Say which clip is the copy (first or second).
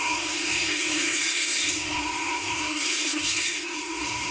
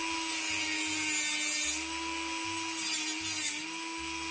first